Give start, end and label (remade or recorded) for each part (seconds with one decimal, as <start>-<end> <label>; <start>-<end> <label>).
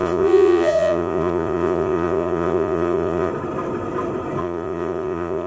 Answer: 0.0-3.3 remade; 3.3-4.4 recorded; 4.4-5.5 remade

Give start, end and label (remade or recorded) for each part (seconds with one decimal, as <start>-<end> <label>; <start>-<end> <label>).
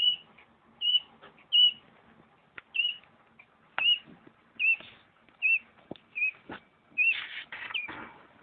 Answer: 0.0-8.4 recorded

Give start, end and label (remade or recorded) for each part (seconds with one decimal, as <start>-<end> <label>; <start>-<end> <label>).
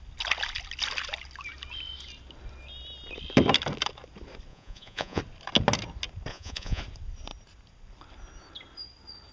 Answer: 0.0-4.5 recorded; 4.5-5.2 remade; 5.2-6.3 recorded; 6.3-6.8 remade; 6.8-9.3 recorded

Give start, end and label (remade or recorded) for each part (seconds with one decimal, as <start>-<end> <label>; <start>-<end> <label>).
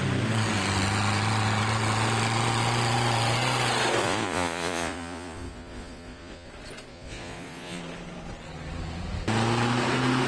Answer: 0.0-4.0 recorded; 4.0-6.5 remade; 6.5-6.9 recorded; 6.9-7.8 remade; 7.8-10.3 recorded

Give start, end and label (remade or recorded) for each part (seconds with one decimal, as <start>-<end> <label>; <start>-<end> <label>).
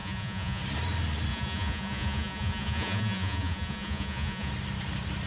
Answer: 0.0-0.6 remade; 0.6-1.3 recorded; 1.3-4.5 remade; 4.5-5.3 recorded